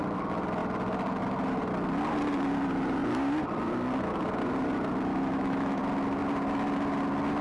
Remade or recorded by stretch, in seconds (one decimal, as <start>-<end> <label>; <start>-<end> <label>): 0.0-5.1 recorded; 5.1-5.8 remade; 5.8-7.4 recorded